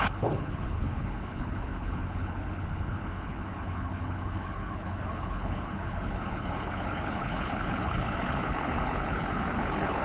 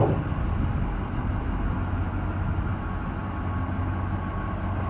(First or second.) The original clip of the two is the second